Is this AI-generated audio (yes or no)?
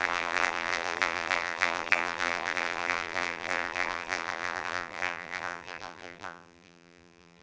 yes